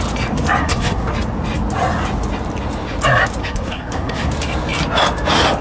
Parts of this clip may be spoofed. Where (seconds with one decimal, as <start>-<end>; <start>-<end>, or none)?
0.6-1.1; 3.4-4.3